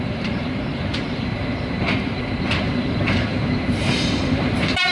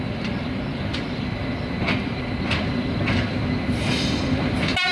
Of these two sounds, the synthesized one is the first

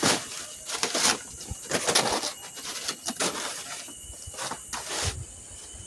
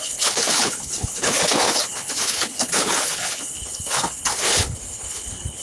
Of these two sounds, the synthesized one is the second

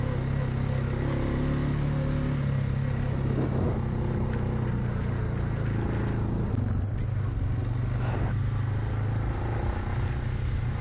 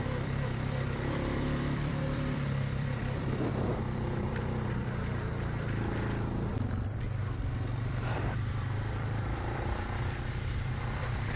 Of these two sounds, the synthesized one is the second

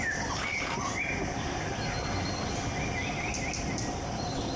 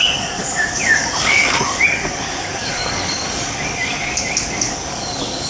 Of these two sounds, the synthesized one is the second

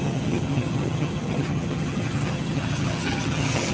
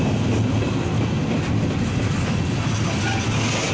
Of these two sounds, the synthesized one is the first